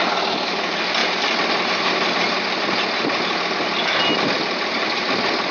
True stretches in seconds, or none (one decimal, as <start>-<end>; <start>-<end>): 0.0-5.5